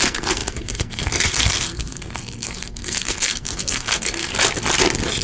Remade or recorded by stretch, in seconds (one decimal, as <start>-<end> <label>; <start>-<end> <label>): 0.0-4.3 remade; 4.3-5.2 recorded